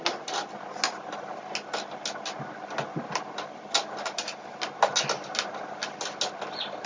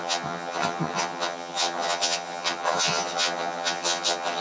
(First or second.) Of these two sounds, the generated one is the second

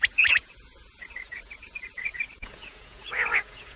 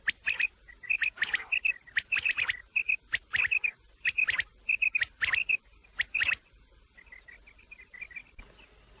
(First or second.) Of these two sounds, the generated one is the first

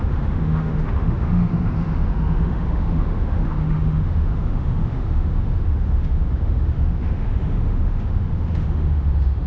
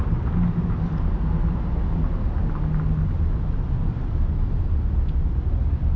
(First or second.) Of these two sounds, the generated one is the first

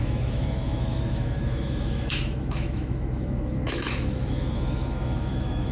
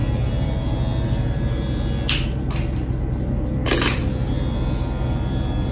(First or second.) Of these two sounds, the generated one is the first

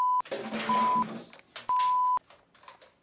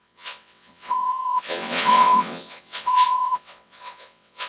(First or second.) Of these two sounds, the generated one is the second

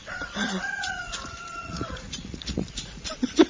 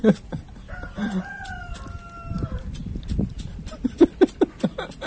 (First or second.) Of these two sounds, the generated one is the first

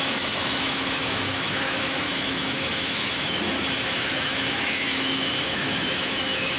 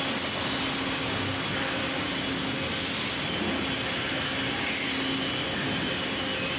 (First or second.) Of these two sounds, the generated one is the first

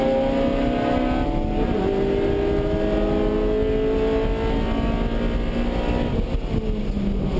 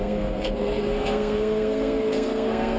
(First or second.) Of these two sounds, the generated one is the second